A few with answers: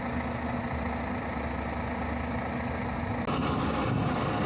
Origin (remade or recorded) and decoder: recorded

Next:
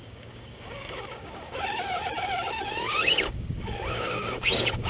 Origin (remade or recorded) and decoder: remade, codec, DAC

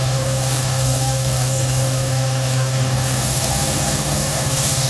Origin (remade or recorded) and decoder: remade, codec, DAC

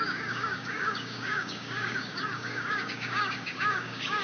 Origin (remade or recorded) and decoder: remade, codec, DAC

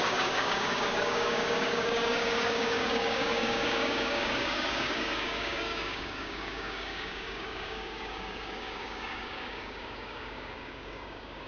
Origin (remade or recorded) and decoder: remade, codec, DAC